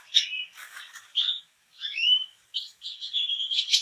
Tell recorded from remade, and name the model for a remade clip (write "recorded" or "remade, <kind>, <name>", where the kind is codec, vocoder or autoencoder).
remade, codec, DAC